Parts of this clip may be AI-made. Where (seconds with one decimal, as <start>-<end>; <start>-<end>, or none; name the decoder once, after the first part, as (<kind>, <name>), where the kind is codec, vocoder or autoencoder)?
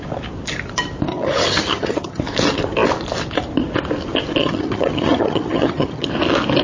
1.1-2.2 (vocoder, HiFi-GAN); 4.4-6.1